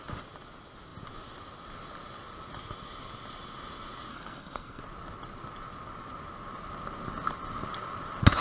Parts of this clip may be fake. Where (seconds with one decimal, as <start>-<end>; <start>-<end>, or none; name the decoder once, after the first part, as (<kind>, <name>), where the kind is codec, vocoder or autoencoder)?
4.1-4.8 (codec, SNAC)